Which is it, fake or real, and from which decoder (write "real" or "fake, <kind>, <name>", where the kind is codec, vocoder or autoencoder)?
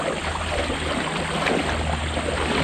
real